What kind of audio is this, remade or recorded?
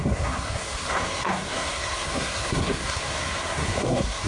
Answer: remade